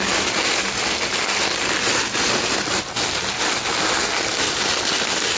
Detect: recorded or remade recorded